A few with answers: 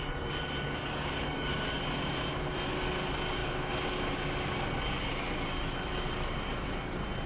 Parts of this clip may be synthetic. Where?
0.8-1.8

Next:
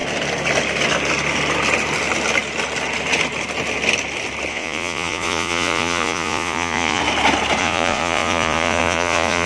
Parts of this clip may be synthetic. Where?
4.5-7.0; 7.6-9.5

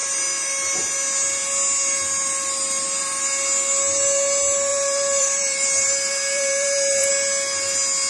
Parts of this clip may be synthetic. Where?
4.7-7.1